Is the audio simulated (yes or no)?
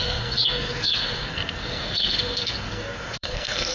yes